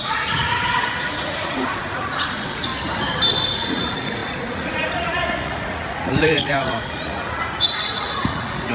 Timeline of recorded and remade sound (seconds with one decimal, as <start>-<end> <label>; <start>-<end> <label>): 0.0-2.7 remade; 2.7-3.5 recorded; 3.5-8.7 remade